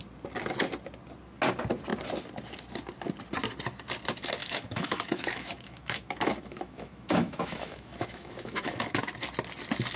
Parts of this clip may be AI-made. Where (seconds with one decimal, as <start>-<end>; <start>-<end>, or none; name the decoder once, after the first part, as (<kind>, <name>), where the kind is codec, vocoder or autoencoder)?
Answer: 4.4-9.0 (autoencoder, DAC-VAE)